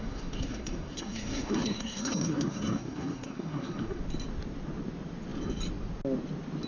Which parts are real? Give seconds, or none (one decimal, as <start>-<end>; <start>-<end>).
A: 4.0-6.7

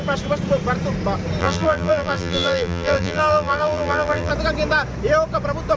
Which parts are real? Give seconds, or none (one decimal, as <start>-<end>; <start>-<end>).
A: 0.0-1.4; 4.3-5.8

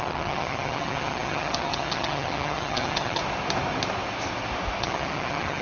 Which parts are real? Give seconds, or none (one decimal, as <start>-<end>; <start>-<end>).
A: 3.2-4.8

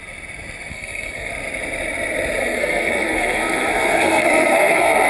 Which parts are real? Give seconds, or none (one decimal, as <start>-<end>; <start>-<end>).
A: 0.0-0.7; 1.3-2.4

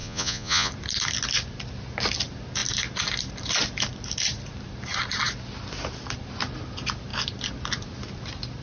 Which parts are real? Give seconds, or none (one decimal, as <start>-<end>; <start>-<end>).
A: 0.7-8.6

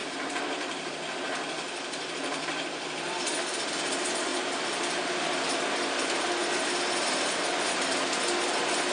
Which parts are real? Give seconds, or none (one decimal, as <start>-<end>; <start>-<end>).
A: 0.9-4.3; 5.3-8.9